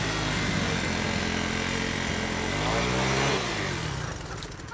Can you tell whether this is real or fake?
real